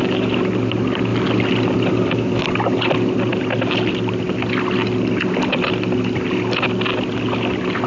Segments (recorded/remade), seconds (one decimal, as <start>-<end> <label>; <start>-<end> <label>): 0.0-7.9 recorded